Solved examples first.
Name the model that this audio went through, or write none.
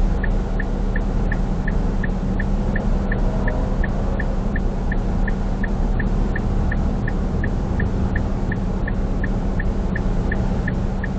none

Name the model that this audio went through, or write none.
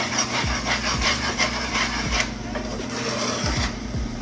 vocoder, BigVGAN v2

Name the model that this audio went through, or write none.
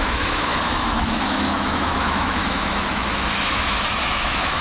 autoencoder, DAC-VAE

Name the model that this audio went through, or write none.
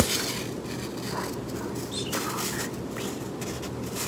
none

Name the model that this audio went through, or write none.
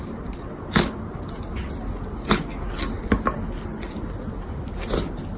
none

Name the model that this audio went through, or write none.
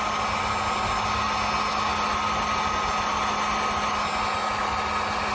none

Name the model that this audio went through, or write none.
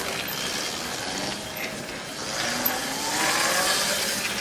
none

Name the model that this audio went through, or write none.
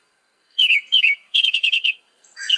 codec, SNAC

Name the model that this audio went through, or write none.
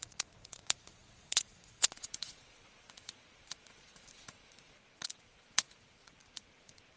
vocoder, Vocos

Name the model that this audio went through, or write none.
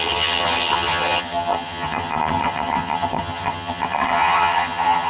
vocoder, HiFi-GAN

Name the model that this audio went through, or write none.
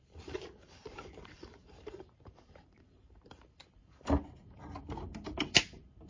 vocoder, BigVGAN v2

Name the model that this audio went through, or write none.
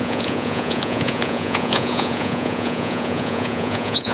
vocoder, Vocos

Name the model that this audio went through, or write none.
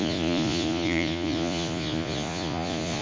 vocoder, Vocos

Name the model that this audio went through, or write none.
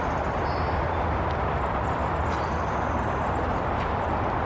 none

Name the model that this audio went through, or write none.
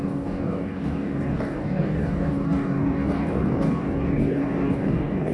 codec, DAC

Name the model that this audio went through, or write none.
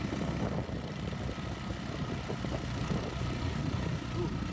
none